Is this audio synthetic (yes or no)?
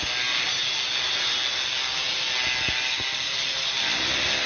no